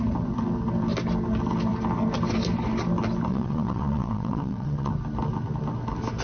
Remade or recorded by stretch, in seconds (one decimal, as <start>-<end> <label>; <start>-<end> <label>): 0.0-3.3 recorded; 3.3-4.9 remade; 4.9-6.2 recorded